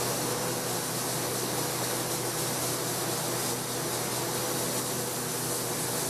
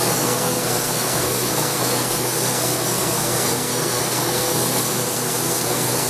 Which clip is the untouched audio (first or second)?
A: first